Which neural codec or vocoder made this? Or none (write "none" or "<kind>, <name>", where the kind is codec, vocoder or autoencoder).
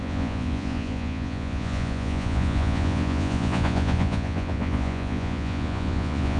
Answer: vocoder, Vocos